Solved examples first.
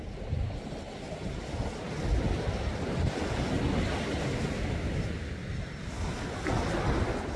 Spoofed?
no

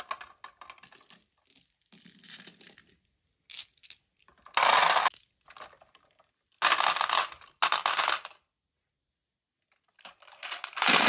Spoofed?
no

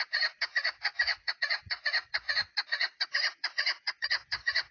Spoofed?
yes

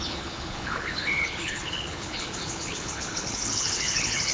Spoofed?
yes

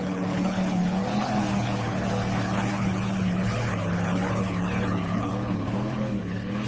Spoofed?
yes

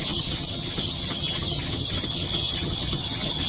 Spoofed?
yes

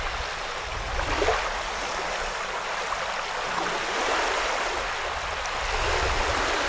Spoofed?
no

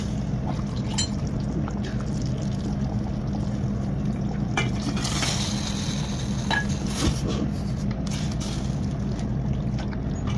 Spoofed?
no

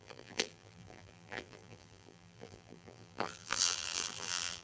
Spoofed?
yes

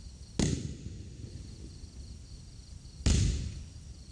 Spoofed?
no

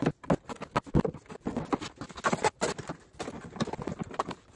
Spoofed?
no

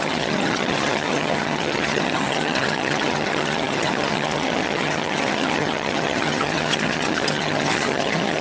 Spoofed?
yes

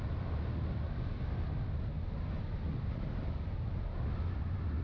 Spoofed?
no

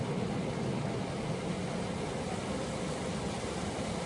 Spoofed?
no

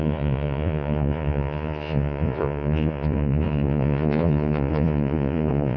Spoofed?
yes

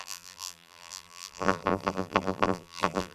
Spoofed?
yes